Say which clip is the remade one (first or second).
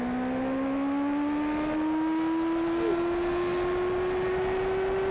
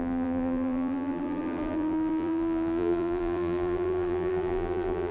second